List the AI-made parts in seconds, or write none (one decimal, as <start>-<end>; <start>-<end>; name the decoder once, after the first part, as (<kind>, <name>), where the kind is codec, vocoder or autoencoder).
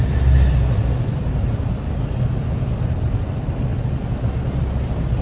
none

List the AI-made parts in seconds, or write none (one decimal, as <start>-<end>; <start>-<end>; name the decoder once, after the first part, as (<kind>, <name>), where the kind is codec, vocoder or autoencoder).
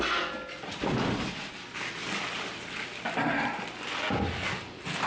none